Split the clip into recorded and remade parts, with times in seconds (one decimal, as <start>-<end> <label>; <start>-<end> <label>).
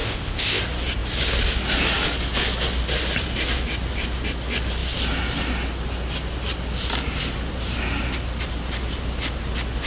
0.0-0.6 remade; 0.6-9.9 recorded